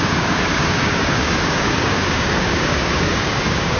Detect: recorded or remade remade